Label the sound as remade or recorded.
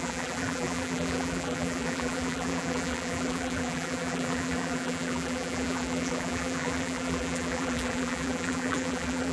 remade